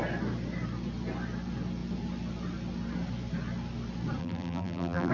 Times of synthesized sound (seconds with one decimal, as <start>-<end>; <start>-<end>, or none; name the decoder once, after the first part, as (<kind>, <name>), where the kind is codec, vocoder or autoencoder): 4.2-5.1 (vocoder, BigVGAN v2)